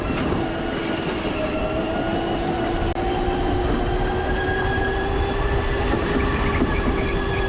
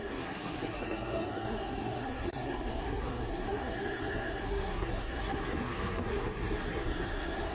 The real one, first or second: first